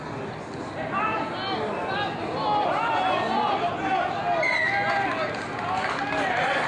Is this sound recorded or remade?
recorded